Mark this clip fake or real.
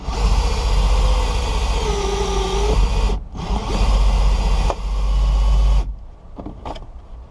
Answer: real